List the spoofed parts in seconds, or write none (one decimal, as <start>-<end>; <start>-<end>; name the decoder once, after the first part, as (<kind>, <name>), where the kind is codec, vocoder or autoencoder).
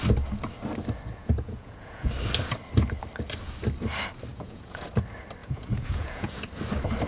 1.2-2.1 (vocoder, Vocos); 4.3-4.9; 5.4-6.4